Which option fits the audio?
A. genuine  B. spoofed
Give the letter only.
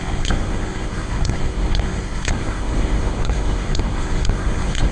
B